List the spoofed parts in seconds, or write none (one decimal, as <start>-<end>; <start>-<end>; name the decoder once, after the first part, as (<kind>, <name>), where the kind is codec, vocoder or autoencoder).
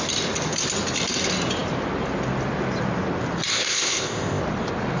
3.5-4.4 (codec, ZipCodec)